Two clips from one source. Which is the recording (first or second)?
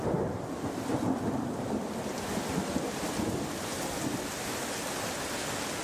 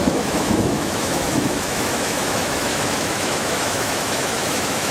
first